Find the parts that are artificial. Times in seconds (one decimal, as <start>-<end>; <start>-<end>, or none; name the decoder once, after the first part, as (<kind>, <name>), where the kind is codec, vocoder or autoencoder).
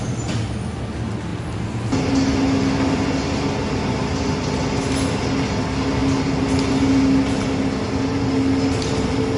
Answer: none